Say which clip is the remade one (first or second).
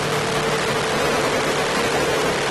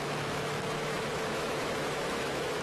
second